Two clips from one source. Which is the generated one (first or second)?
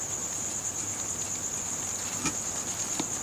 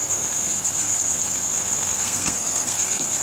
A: second